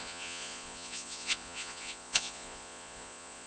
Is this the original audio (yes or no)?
no